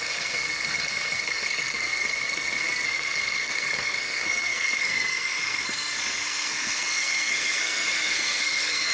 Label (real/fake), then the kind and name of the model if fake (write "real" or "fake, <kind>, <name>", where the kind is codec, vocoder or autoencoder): fake, codec, SNAC